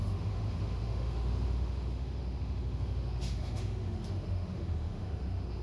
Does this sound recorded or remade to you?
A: remade